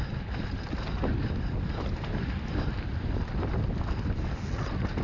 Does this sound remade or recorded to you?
recorded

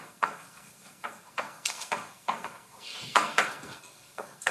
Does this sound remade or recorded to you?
remade